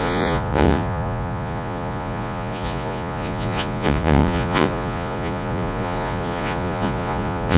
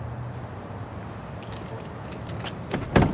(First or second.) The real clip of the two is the second